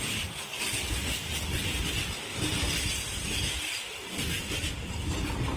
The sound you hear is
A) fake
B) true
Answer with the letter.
B